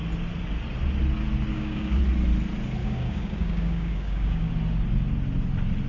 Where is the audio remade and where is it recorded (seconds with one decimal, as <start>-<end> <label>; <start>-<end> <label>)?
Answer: 0.0-1.5 recorded; 1.5-2.0 remade; 2.0-2.8 recorded; 2.8-4.5 remade; 4.5-5.9 recorded